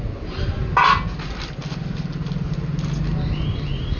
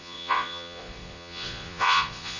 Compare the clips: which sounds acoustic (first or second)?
first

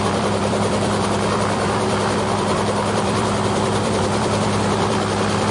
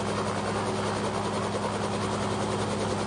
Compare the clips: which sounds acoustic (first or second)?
second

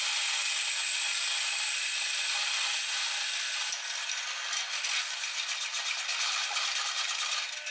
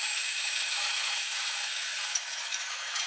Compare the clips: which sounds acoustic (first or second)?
first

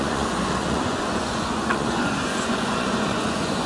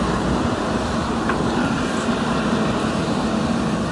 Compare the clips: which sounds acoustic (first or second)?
second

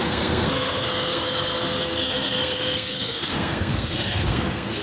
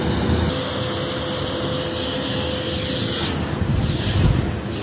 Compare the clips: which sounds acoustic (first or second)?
second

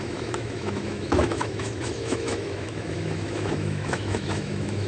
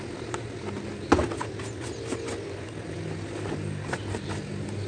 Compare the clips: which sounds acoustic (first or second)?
second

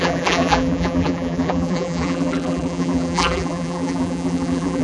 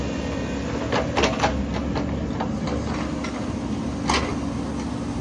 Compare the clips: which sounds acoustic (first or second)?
second